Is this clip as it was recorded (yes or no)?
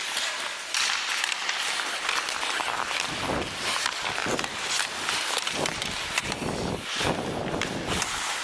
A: yes